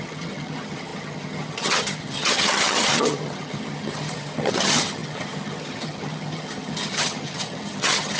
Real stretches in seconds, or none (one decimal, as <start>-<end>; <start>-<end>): none